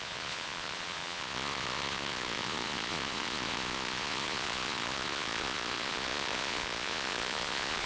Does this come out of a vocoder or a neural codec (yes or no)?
yes